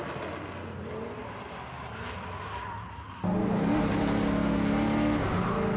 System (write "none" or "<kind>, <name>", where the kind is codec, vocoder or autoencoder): none